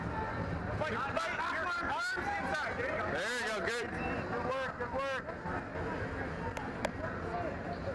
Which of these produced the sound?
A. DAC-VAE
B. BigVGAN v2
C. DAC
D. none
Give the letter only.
D